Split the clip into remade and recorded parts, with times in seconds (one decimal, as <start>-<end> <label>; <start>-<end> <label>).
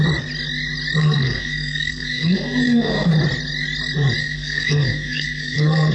0.0-1.0 recorded; 1.0-3.1 remade; 3.1-4.2 recorded; 4.2-5.9 remade